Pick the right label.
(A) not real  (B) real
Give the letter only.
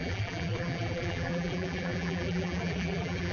A